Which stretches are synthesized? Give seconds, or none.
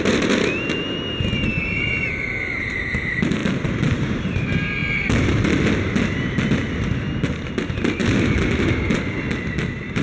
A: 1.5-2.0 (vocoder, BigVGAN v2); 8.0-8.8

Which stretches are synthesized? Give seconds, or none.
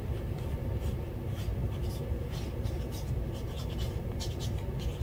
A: 1.6-4.3 (vocoder, BigVGAN v2)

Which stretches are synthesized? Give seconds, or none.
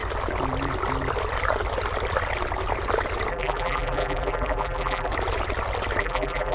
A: 3.3-5.1 (vocoder, BigVGAN v2); 6.0-6.5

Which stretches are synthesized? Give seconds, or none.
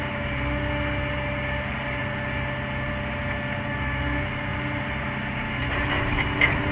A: none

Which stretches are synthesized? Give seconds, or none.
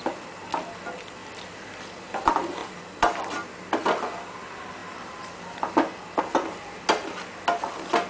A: 1.2-2.1 (vocoder, BigVGAN v2); 2.6-3.2; 4.8-6.2